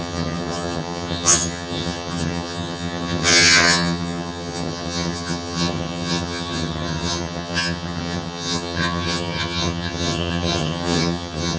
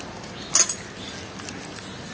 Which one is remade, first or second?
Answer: first